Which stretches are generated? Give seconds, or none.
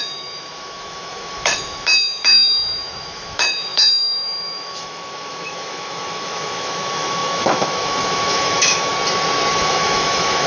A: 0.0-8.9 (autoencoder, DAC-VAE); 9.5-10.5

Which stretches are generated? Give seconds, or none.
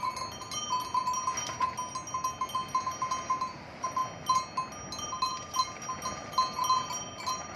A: none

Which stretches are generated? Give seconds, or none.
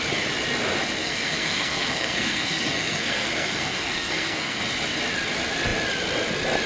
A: 1.0-4.6 (codec, SNAC)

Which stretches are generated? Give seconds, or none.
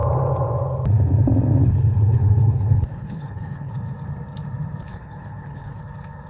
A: 1.6-3.7 (codec, HILCodec); 4.9-5.8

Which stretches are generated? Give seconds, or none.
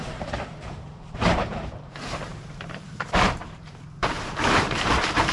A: 0.0-5.3 (vocoder, BigVGAN v2)